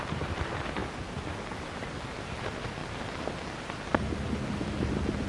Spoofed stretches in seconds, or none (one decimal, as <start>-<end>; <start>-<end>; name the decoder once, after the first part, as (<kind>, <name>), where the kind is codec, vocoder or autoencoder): none